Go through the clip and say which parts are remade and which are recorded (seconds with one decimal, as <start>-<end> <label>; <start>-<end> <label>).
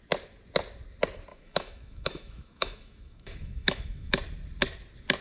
0.0-1.3 recorded; 1.3-4.1 remade; 4.1-5.2 recorded